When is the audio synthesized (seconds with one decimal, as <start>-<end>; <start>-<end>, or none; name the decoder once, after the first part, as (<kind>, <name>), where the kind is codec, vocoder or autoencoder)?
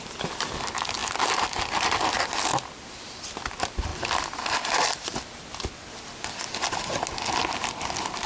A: 2.5-3.5 (vocoder, BigVGAN v2); 3.9-5.2